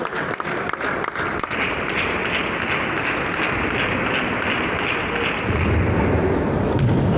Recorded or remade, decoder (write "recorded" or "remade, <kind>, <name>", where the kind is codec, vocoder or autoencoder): recorded